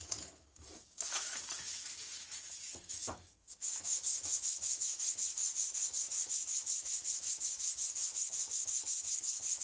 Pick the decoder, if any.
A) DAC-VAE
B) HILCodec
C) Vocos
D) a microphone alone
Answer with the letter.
A